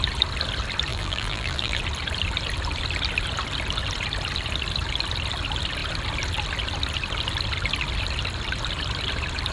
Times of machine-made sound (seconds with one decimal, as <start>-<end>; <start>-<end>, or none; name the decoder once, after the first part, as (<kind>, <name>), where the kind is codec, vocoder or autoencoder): 0.9-1.8 (vocoder, BigVGAN v2)